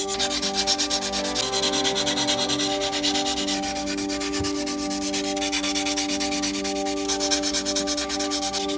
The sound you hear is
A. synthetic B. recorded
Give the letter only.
B